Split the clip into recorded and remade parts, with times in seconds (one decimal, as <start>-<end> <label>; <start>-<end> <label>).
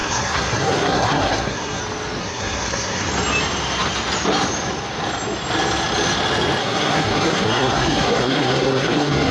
0.0-1.8 remade; 1.8-2.2 recorded; 2.2-3.1 remade; 3.1-6.6 recorded; 6.6-9.3 remade